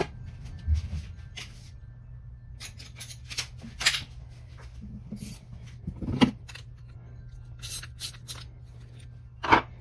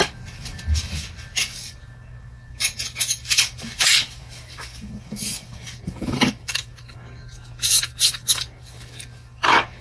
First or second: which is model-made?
second